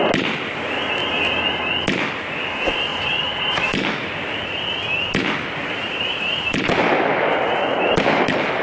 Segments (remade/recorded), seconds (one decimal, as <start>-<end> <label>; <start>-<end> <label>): 0.0-2.9 recorded; 2.9-4.6 remade; 4.6-5.6 recorded; 5.6-6.8 remade; 6.8-8.6 recorded